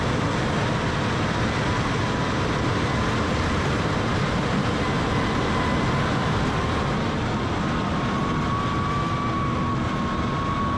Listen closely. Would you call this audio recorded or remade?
recorded